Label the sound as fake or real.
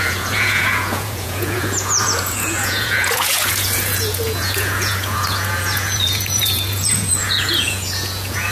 fake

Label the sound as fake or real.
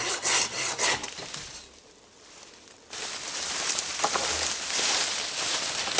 real